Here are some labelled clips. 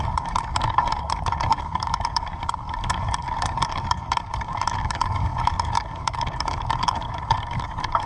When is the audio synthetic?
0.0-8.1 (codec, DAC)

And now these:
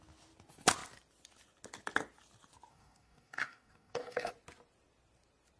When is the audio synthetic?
2.7-4.3 (codec, DAC)

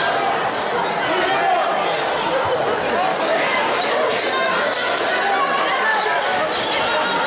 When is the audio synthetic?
3.1-4.2 (codec, DAC); 5.9-6.6

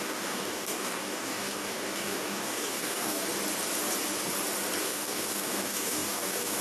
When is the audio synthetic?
0.0-3.2 (codec, DAC); 4.8-6.6

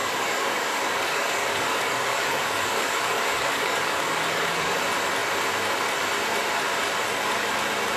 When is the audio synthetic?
0.0-4.8 (codec, DAC)

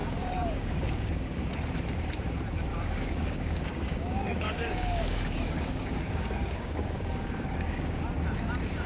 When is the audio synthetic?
0.0-1.5 (codec, DAC); 2.7-8.0

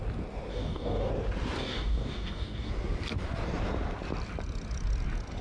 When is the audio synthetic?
0.5-1.1 (codec, DAC); 1.6-2.7